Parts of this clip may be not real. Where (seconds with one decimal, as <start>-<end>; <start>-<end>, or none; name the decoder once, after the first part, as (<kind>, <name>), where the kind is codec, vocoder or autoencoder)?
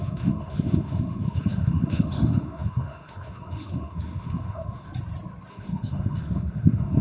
0.0-4.9 (autoencoder, DAC-VAE); 5.5-7.0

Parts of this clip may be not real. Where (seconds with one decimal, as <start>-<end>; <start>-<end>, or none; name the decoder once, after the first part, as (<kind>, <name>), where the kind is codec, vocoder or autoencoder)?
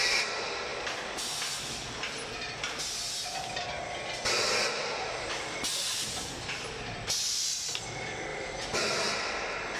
0.7-1.2 (vocoder, BigVGAN v2); 8.3-8.8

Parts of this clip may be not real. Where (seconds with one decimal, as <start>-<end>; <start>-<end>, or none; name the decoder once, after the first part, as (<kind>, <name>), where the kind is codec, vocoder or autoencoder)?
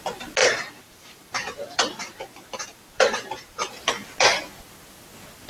0.4-3.7 (vocoder, BigVGAN v2)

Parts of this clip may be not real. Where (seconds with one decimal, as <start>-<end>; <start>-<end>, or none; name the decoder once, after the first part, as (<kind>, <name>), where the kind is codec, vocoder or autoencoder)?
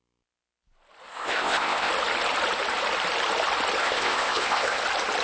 1.1-1.9 (codec, ZipCodec); 3.8-4.8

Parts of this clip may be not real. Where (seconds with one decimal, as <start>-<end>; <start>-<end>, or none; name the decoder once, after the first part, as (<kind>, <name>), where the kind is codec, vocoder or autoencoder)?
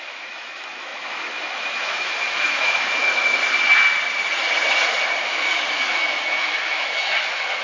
0.0-3.4 (autoencoder, DAC-VAE); 5.2-7.6